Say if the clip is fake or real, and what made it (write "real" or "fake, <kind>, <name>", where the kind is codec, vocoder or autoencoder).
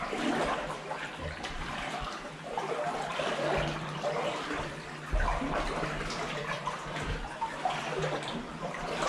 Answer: fake, vocoder, BigVGAN v2